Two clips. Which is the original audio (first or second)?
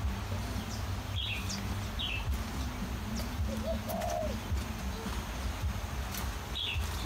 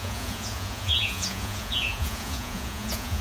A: first